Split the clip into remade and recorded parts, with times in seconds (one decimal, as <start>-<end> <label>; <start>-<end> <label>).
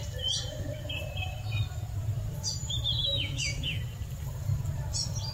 0.0-3.0 recorded; 3.0-3.8 remade; 3.8-5.3 recorded